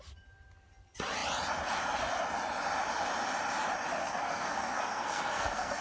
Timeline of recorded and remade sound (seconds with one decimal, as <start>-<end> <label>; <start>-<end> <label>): 0.0-4.0 recorded; 4.0-5.8 remade